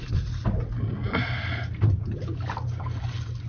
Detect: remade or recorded recorded